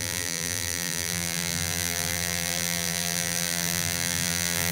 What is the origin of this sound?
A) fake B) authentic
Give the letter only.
A